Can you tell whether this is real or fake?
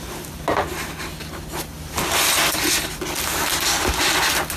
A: real